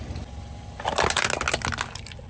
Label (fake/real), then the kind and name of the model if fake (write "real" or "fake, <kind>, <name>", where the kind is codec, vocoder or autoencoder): real